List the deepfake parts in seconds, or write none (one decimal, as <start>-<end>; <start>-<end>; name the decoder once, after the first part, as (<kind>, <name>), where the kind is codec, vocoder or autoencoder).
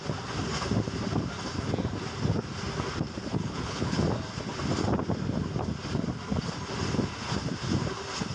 3.3-4.0 (codec, HILCodec)